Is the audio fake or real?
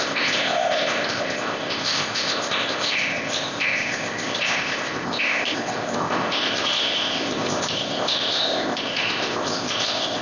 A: fake